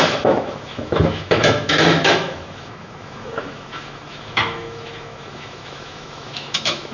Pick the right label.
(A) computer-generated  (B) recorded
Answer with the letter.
A